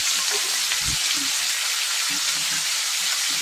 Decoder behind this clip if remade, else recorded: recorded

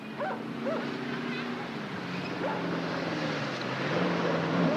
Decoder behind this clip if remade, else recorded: recorded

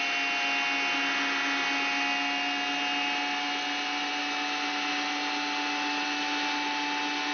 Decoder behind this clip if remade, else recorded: recorded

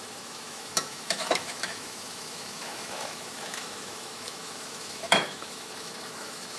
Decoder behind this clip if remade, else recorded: remade, autoencoder, DAC-VAE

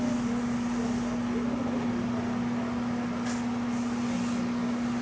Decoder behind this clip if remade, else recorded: recorded